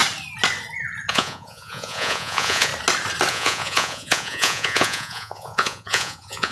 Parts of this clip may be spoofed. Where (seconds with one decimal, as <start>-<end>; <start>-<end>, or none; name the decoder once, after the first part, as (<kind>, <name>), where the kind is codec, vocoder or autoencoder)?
1.1-2.7 (vocoder, Vocos); 3.3-6.5